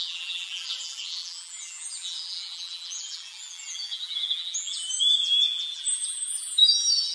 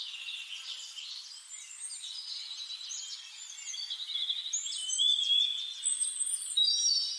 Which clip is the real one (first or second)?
second